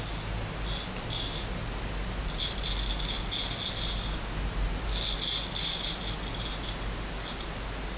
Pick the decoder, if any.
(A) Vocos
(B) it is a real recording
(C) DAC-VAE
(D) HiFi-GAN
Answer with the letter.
B